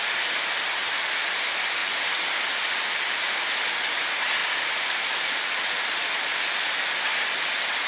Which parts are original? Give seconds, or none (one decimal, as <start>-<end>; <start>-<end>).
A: 1.8-3.8